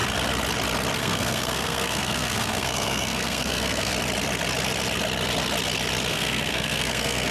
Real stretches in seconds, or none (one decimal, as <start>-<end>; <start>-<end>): 0.0-1.0; 3.9-6.1